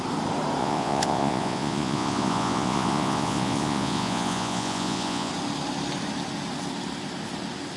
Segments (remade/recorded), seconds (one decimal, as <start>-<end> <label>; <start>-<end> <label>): 0.0-0.6 recorded; 0.6-5.3 remade; 5.3-7.8 recorded